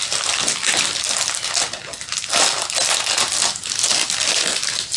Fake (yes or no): no